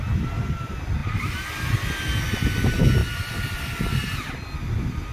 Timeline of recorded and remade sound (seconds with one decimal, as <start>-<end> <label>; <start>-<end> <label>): 0.0-5.1 recorded